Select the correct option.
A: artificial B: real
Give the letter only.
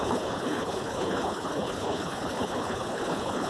A